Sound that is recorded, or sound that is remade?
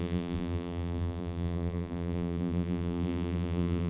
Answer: remade